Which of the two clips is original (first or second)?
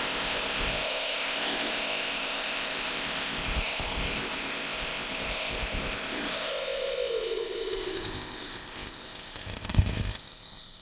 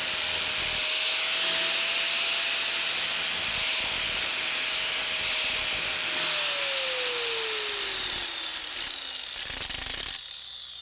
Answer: second